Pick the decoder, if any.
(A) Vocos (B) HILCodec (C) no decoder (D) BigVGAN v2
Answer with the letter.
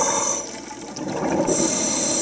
D